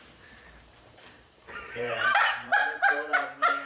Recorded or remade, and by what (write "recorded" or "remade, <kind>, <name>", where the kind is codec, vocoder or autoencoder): remade, vocoder, BigVGAN v2